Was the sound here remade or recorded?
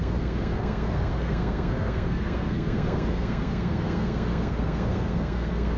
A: remade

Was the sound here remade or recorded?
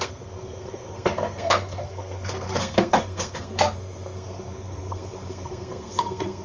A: remade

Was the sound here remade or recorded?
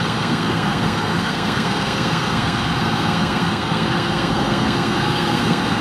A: remade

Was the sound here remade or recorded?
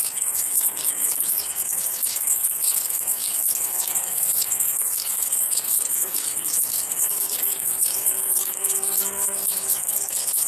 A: remade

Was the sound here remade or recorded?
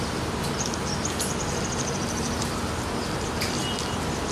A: recorded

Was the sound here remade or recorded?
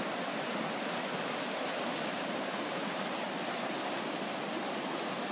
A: recorded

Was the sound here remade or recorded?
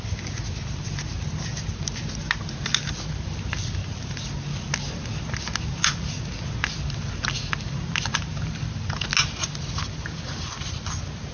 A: recorded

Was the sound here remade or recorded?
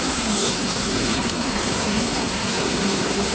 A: remade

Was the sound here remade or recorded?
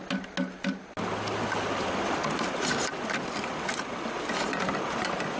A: recorded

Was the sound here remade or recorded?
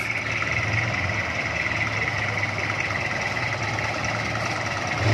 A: recorded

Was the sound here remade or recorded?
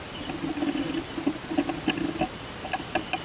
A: recorded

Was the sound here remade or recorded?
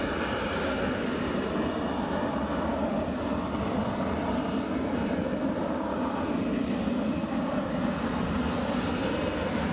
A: recorded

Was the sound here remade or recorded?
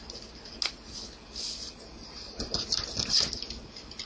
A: recorded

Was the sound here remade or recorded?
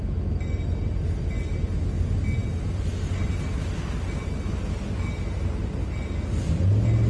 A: recorded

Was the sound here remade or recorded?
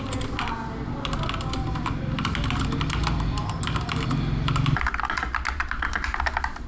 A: recorded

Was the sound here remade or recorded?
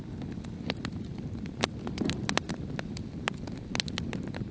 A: recorded